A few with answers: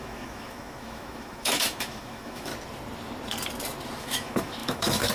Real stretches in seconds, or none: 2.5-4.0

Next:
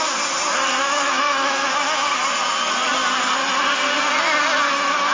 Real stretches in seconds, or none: 0.0-0.8; 1.7-5.1